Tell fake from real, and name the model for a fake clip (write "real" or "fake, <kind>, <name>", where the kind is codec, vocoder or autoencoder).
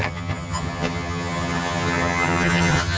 fake, vocoder, HiFi-GAN